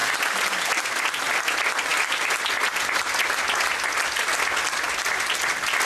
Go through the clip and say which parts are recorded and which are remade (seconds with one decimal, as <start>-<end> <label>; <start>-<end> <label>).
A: 0.0-5.9 recorded